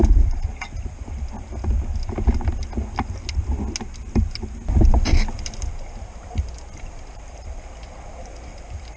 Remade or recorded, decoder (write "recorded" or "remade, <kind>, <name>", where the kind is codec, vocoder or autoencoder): recorded